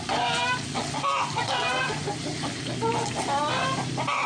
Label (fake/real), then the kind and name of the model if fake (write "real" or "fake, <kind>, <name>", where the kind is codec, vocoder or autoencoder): real